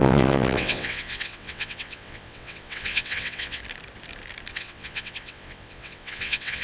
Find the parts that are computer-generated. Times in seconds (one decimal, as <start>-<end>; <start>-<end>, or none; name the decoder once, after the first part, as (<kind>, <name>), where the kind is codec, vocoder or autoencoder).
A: 0.0-3.6 (vocoder, WaveNeXt); 4.5-6.6